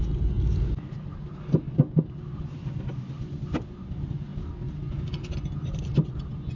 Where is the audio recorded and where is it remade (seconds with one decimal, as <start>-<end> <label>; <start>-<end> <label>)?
0.0-6.5 recorded